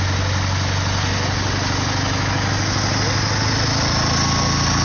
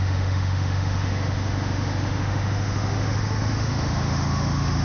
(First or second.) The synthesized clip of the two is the second